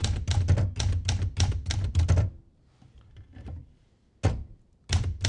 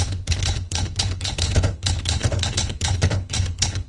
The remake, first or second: second